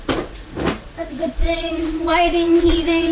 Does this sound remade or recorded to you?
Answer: remade